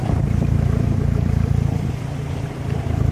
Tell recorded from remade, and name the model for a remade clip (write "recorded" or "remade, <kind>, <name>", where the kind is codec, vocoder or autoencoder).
remade, vocoder, BigVGAN v2